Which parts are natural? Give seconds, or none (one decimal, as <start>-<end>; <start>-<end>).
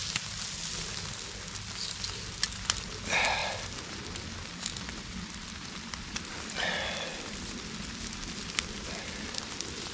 0.0-9.9